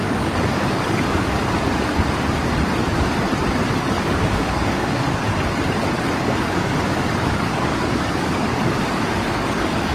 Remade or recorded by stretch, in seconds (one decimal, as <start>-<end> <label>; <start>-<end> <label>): 0.0-1.4 remade; 1.4-4.0 recorded; 4.0-5.2 remade; 5.2-6.1 recorded; 6.1-9.9 remade